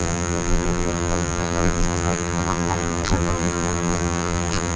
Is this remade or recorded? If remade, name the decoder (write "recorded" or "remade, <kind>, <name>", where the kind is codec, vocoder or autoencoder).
remade, vocoder, BigVGAN v2